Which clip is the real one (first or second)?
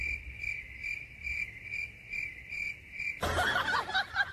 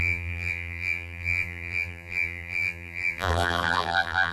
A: first